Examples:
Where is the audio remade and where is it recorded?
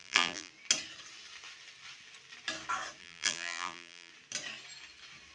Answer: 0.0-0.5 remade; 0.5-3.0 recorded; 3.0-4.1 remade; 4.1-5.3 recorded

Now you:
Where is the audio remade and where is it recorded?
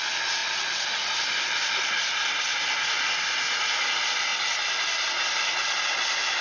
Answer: 0.0-6.4 recorded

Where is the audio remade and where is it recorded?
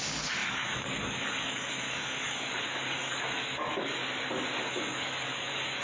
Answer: 0.0-4.0 remade; 4.0-4.6 recorded; 4.6-5.8 remade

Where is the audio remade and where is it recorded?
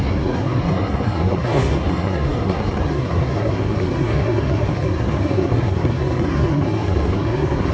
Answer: 0.0-7.7 remade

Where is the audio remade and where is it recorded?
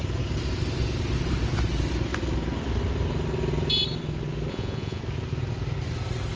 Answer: 0.0-4.5 recorded; 4.5-5.0 remade; 5.0-6.4 recorded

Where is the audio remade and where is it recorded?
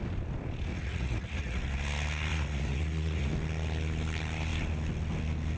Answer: 0.0-0.7 recorded; 0.7-1.6 remade; 1.6-2.3 recorded; 2.3-3.3 remade; 3.3-5.6 recorded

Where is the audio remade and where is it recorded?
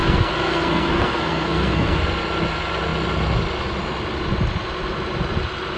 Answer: 0.0-2.0 remade; 2.0-5.8 recorded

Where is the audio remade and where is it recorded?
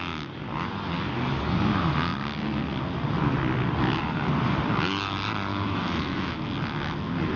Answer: 0.0-5.5 recorded; 5.5-6.3 remade; 6.3-7.4 recorded